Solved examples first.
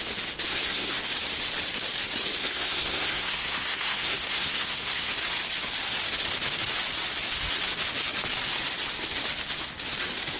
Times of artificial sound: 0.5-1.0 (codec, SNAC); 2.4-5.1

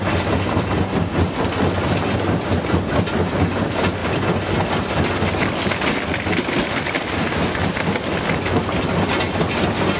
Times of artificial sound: none

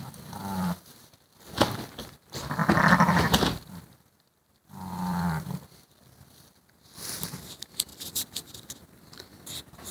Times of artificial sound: 0.4-1.0 (vocoder, BigVGAN v2)

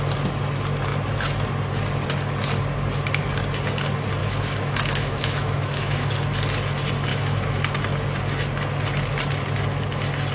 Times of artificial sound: 4.2-6.1 (autoencoder, DAC-VAE); 7.1-7.6

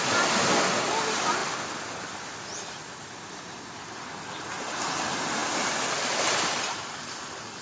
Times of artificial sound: none

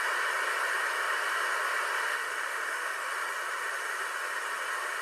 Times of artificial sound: 2.1-3.1 (autoencoder, DAC-VAE)

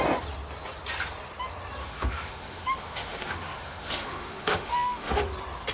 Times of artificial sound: 1.8-5.2 (autoencoder, DAC-VAE)